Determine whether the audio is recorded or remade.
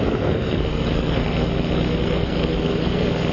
remade